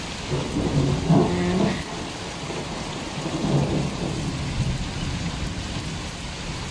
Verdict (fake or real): real